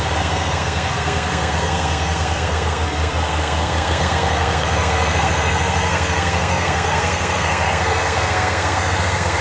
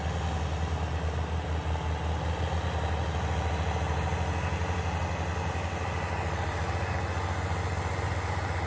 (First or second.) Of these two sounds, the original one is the second